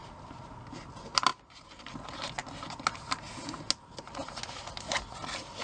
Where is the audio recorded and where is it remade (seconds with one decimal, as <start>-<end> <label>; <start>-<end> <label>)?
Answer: 0.0-0.6 remade; 0.6-1.3 recorded; 1.3-1.9 remade; 1.9-5.6 recorded